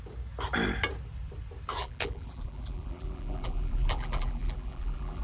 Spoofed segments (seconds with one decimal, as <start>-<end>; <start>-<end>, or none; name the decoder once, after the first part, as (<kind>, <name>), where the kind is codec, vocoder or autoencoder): 1.8-5.2 (vocoder, BigVGAN v2)